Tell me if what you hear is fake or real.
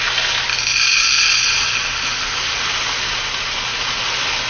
real